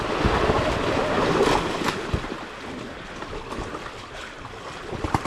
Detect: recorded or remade recorded